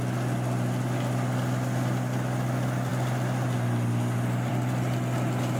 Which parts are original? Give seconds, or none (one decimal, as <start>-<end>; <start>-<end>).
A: 0.0-5.6

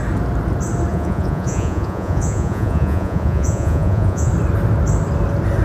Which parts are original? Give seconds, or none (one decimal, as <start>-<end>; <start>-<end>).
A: 0.0-0.9; 4.3-5.6

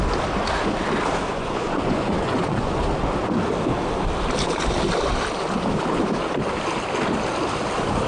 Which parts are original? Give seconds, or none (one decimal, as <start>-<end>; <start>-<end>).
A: 0.0-1.3; 2.8-8.1